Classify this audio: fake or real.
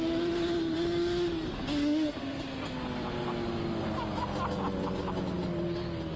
real